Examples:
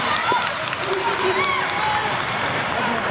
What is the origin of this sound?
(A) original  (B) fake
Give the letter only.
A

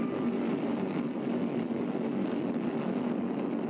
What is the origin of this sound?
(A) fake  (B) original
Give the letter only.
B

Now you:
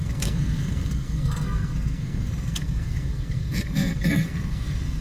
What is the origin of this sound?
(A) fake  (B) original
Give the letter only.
A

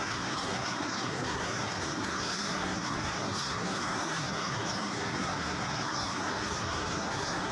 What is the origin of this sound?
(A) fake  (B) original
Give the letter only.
A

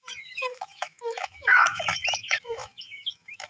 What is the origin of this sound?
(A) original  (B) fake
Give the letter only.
B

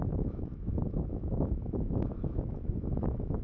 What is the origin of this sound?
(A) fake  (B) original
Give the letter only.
A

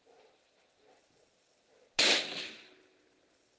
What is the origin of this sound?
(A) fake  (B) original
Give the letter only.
B